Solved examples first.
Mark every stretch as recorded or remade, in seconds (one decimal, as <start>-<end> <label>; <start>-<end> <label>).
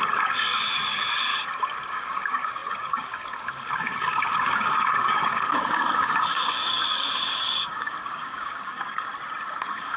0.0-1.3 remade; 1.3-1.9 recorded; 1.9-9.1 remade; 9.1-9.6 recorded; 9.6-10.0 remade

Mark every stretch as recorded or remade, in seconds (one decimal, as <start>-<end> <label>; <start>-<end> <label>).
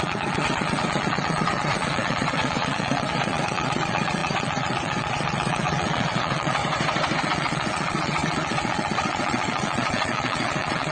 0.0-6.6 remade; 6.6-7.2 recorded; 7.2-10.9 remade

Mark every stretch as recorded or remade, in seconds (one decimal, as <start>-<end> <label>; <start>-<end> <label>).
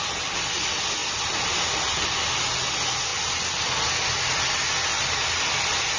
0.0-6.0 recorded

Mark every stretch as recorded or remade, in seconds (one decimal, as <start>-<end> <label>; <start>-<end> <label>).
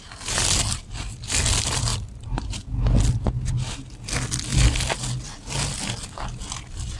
0.0-7.0 recorded